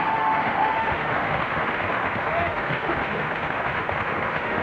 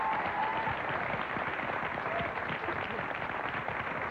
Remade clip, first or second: first